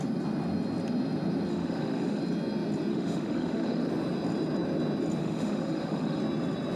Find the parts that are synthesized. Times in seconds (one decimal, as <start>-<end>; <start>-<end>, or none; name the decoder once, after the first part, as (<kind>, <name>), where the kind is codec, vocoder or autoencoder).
1.5-2.2 (autoencoder, DAC-VAE); 2.9-3.9; 5.2-6.2